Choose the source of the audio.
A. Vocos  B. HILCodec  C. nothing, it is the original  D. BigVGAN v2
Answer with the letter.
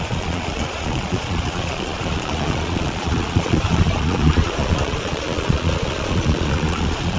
A